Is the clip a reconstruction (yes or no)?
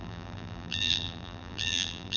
yes